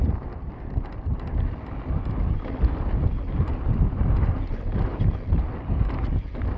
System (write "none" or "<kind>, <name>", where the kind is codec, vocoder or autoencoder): vocoder, BigVGAN v2